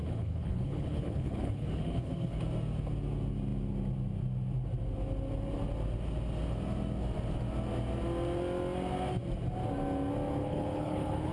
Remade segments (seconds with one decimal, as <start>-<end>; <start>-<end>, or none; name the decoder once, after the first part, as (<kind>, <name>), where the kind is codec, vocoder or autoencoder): 0.0-2.4 (codec, HILCodec); 10.4-11.3